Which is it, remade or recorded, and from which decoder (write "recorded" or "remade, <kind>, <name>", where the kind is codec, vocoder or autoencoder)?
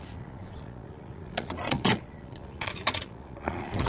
remade, vocoder, Vocos